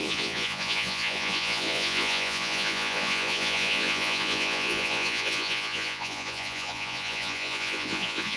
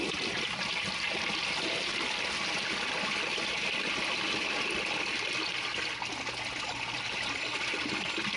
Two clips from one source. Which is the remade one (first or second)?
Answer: first